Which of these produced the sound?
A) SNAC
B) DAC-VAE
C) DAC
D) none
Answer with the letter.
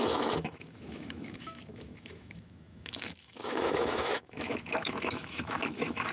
B